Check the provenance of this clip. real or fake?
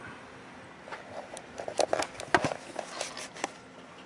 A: real